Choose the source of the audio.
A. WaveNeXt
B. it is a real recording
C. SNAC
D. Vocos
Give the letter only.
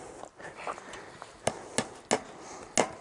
B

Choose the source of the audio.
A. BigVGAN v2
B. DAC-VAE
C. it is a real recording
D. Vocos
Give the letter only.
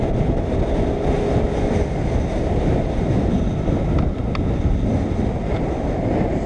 C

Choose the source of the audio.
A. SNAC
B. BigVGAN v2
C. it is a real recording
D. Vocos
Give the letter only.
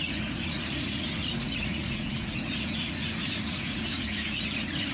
D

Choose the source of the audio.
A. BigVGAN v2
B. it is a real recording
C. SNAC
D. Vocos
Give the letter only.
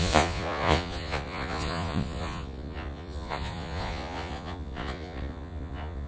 D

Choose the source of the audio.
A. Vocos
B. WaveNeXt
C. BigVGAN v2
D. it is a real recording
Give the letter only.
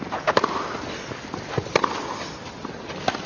D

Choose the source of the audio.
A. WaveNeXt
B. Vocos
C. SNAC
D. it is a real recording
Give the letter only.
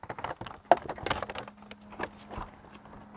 D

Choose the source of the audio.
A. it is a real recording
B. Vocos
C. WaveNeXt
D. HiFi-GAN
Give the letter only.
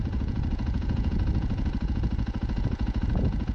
B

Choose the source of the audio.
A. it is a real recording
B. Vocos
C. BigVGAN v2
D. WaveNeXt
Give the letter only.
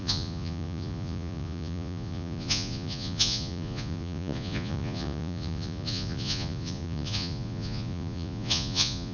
B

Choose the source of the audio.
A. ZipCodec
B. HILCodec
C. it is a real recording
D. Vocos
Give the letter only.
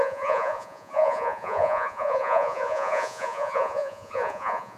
D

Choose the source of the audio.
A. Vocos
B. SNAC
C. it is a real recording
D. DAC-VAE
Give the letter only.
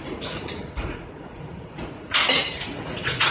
A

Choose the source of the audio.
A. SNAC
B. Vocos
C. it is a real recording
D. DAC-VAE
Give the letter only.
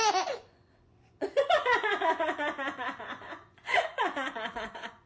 B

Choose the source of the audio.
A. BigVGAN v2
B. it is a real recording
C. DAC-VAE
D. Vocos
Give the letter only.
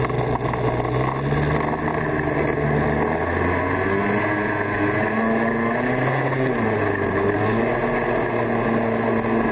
B